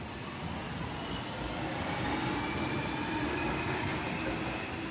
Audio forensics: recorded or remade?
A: recorded